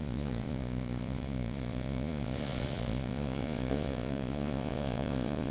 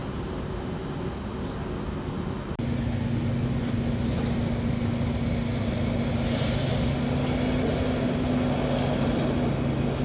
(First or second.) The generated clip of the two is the first